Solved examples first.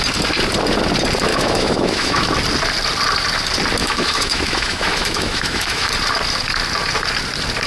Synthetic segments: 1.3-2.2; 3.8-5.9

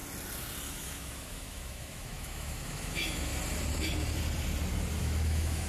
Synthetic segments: 0.7-3.3; 5.0-5.7

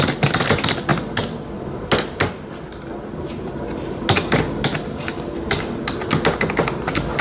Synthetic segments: none